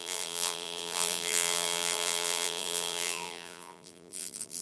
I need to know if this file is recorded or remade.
remade